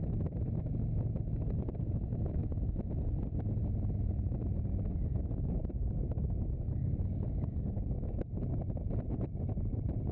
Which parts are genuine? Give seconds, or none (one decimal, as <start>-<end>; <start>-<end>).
0.0-5.1; 8.4-10.1